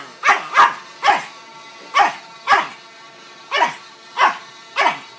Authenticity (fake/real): real